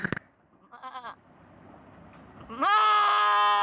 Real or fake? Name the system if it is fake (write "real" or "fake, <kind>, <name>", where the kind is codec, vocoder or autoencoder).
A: real